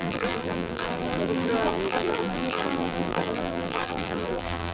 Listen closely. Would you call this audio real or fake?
fake